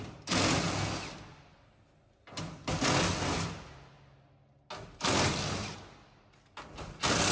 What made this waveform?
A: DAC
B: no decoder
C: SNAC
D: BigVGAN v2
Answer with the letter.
B